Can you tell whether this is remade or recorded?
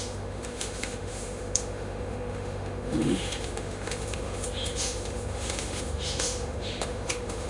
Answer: remade